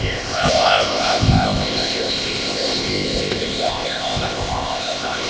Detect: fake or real fake